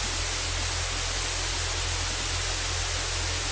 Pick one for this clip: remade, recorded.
recorded